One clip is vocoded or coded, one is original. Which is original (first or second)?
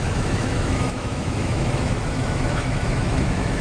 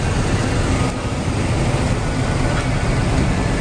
second